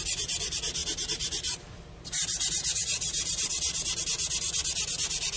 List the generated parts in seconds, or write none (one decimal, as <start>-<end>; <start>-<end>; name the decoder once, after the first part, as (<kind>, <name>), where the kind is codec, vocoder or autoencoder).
0.8-4.0 (vocoder, BigVGAN v2)